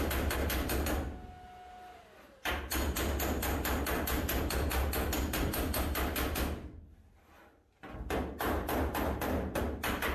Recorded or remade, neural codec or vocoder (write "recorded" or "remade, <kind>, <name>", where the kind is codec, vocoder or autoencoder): recorded